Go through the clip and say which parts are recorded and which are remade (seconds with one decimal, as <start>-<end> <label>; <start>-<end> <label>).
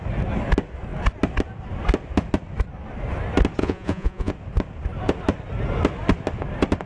0.0-3.6 recorded; 3.6-4.3 remade; 4.3-6.9 recorded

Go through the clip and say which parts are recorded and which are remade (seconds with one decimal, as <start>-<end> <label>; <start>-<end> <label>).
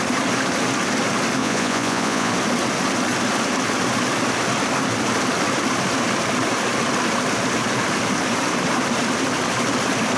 0.0-1.4 recorded; 1.4-2.3 remade; 2.3-10.2 recorded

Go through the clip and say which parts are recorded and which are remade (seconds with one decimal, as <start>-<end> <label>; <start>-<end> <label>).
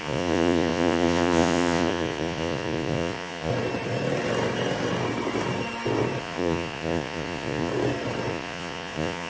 0.0-3.5 remade; 3.5-6.2 recorded; 6.2-7.7 remade; 7.7-8.3 recorded; 8.3-9.3 remade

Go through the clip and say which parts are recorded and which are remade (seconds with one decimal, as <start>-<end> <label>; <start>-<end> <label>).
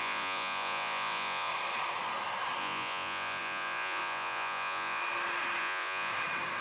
0.0-1.5 remade; 1.5-2.6 recorded; 2.6-5.0 remade; 5.0-5.6 recorded; 5.6-6.1 remade; 6.1-6.6 recorded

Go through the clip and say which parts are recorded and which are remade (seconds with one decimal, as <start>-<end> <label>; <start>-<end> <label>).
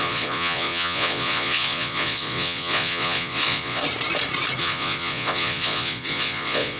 0.0-3.8 remade; 3.8-4.6 recorded; 4.6-6.8 remade